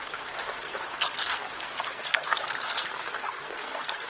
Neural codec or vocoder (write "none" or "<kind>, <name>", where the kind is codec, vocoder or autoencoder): codec, SNAC